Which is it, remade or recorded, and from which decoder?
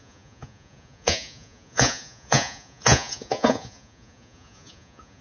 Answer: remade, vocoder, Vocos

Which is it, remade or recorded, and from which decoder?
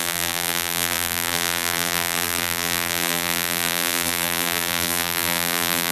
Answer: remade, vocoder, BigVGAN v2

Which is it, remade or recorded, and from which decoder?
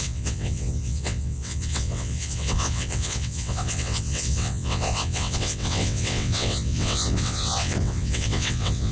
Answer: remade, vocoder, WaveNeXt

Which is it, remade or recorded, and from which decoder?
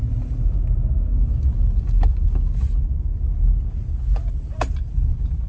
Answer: recorded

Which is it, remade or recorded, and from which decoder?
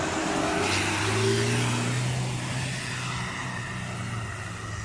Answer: recorded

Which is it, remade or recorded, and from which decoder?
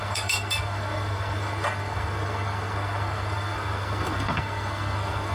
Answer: remade, codec, SNAC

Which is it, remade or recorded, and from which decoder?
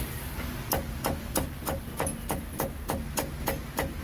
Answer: recorded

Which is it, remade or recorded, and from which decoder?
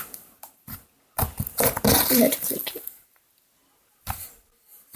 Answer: recorded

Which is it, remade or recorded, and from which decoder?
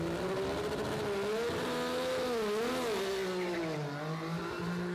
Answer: recorded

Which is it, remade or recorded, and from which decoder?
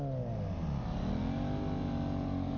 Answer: recorded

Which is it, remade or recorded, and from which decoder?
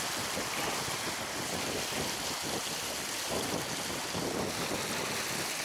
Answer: recorded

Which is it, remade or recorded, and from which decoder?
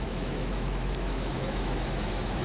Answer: remade, autoencoder, DAC-VAE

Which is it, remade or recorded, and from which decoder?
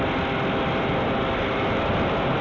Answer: recorded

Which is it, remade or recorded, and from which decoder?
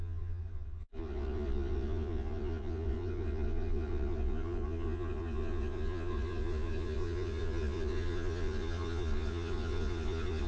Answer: remade, vocoder, Vocos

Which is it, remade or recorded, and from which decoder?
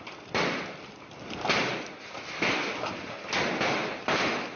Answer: recorded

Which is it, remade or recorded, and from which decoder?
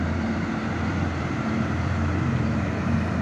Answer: remade, vocoder, BigVGAN v2